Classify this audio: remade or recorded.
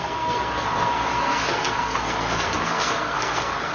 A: remade